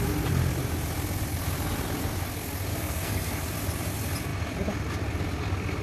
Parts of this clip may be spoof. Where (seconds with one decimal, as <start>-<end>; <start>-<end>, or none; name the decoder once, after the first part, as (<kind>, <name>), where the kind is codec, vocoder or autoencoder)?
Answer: 2.7-3.4 (codec, SNAC)